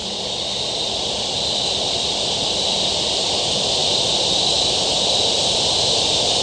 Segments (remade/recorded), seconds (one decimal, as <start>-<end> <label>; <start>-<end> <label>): 0.0-6.4 recorded